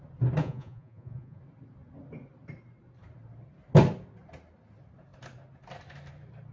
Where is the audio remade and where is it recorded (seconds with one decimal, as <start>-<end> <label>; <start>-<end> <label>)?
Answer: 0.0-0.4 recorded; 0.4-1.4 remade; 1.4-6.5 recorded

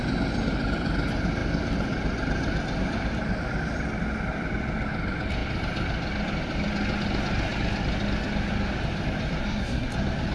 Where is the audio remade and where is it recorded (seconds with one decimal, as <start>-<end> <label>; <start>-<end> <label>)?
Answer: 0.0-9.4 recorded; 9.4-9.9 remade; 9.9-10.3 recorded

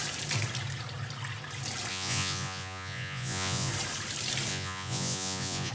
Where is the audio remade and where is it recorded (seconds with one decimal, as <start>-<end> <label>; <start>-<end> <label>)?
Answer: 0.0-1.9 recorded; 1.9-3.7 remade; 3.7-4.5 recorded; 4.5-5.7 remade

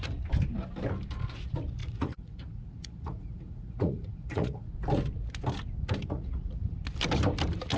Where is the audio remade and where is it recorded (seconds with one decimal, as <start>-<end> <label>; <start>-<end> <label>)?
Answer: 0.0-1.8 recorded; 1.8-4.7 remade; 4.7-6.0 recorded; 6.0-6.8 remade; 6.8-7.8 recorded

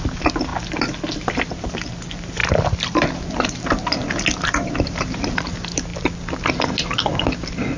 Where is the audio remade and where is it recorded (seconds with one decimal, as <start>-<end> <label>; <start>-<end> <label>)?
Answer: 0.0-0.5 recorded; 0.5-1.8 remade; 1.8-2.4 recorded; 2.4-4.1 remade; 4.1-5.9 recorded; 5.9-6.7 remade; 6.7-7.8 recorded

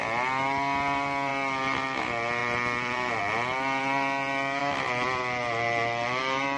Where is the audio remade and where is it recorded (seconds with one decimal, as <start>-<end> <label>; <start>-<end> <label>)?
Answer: 0.0-2.4 recorded; 2.4-3.2 remade; 3.2-4.6 recorded; 4.6-6.6 remade

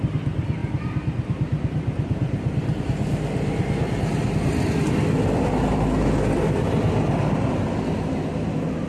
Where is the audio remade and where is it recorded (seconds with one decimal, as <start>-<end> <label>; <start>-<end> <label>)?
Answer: 0.0-8.9 recorded

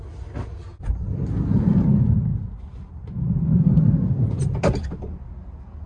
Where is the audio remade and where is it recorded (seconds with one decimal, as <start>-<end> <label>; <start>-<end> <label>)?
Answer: 0.0-5.9 recorded